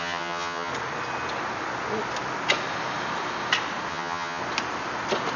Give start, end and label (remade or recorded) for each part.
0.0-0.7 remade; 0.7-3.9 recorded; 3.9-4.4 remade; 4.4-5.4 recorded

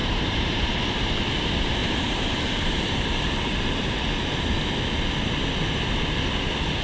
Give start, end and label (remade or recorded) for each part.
0.0-0.7 remade; 0.7-1.8 recorded; 1.8-4.4 remade; 4.4-6.8 recorded

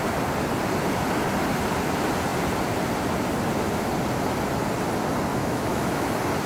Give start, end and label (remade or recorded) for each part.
0.0-5.3 recorded; 5.3-6.1 remade; 6.1-6.5 recorded